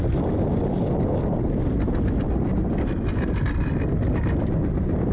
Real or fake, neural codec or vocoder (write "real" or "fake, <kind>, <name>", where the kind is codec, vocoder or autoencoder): real